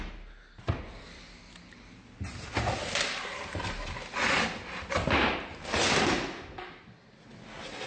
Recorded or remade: recorded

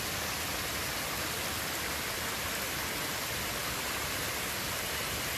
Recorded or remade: recorded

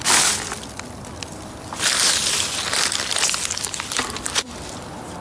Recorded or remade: recorded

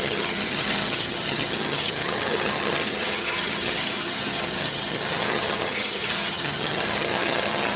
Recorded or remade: remade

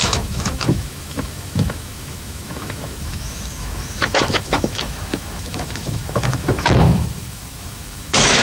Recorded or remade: remade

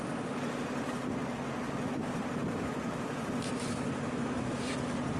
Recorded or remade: recorded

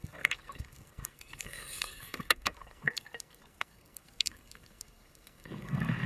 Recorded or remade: remade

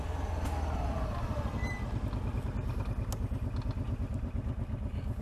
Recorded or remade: recorded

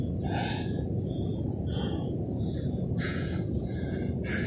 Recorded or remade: remade